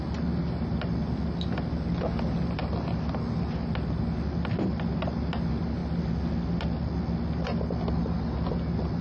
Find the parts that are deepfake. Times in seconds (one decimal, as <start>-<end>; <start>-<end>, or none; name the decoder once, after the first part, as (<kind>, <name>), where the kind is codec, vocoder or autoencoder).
none